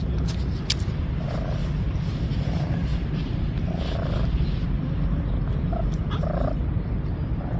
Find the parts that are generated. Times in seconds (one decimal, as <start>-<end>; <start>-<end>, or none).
2.9-6.8